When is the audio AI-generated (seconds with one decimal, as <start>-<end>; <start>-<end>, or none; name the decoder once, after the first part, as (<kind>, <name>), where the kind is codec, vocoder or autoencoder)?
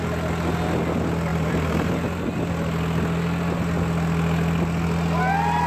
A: 1.3-1.9 (vocoder, BigVGAN v2)